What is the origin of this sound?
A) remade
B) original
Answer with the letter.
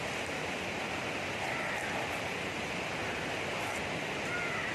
B